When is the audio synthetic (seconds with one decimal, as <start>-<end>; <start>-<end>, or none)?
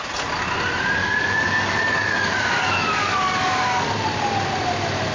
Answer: 1.0-3.9